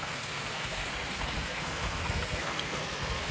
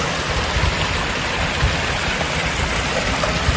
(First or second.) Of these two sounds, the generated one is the first